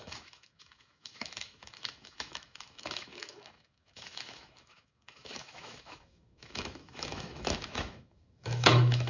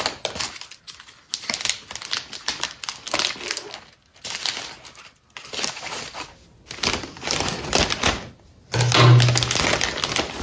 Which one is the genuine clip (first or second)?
second